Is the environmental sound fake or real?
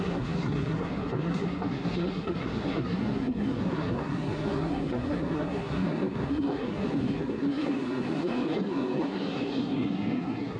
fake